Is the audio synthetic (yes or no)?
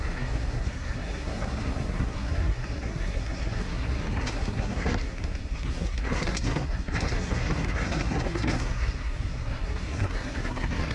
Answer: yes